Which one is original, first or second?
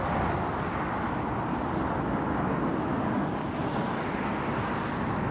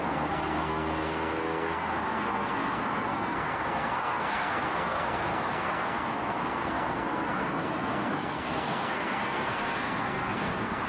first